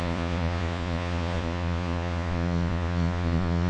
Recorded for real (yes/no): no